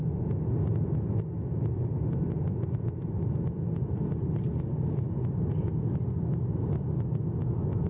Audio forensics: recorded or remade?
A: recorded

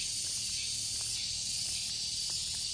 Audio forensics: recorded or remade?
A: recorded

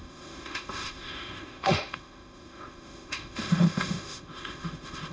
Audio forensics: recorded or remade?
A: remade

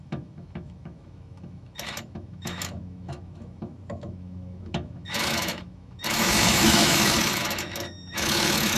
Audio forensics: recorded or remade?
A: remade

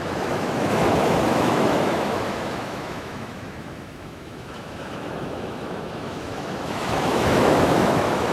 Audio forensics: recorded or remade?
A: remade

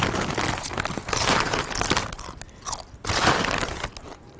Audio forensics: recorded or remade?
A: recorded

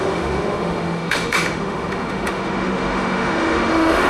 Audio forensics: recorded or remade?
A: remade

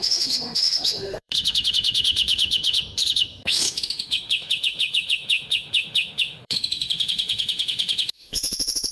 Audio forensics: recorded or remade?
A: remade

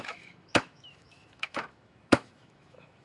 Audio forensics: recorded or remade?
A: remade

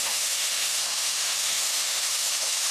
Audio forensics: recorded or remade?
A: remade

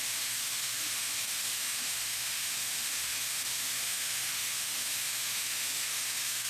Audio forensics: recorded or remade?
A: remade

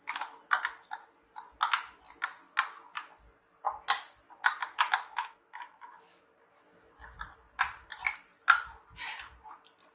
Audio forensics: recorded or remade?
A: recorded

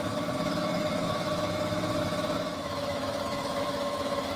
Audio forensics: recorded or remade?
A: remade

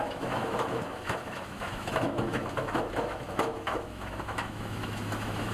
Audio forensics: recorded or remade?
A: remade